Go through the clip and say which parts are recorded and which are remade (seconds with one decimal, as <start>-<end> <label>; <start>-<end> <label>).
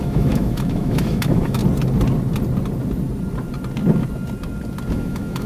0.0-1.6 remade; 1.6-4.9 recorded; 4.9-5.5 remade